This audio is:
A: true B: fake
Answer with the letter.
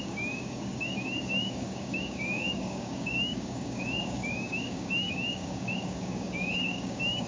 B